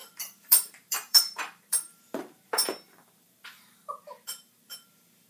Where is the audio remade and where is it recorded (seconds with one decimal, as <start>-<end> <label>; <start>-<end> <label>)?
0.0-5.3 remade